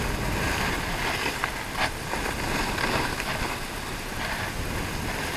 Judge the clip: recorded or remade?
recorded